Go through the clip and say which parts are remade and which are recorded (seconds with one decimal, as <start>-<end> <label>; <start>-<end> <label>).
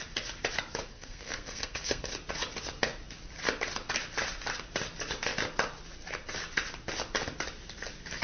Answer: 0.0-0.9 recorded; 0.9-2.1 remade; 2.1-8.2 recorded